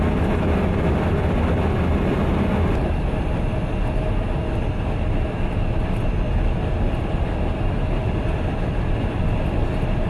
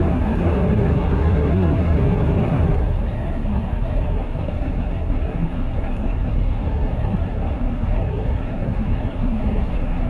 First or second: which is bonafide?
first